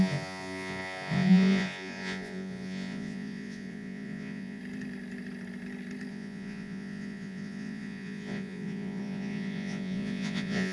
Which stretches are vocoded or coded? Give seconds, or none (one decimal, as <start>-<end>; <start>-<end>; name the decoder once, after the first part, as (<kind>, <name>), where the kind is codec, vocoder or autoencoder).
0.0-4.6 (vocoder, Vocos); 6.1-10.7